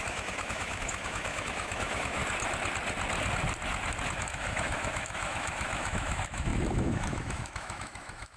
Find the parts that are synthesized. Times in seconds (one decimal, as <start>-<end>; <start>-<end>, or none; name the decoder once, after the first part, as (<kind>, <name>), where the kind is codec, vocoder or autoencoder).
0.0-2.2 (autoencoder, DAC-VAE); 4.2-8.4